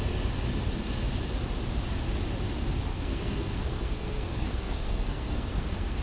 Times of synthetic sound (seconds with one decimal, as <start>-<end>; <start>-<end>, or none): 2.9-6.0